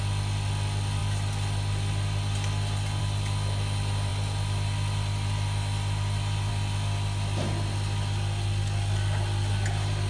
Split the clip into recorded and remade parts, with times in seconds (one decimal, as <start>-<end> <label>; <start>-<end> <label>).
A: 0.0-10.1 recorded